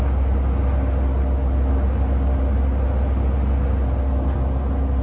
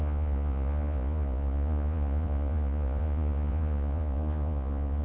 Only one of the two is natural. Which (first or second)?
first